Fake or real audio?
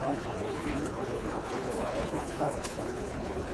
fake